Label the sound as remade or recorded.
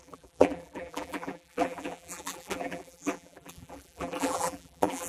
remade